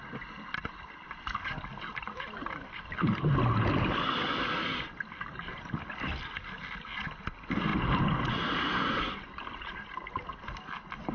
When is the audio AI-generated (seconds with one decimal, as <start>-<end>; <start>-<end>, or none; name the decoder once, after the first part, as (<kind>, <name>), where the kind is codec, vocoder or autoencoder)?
none